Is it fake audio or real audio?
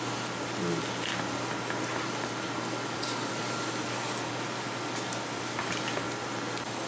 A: real